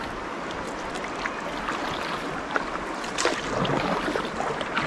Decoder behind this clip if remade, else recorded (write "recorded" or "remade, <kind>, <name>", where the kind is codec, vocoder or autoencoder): recorded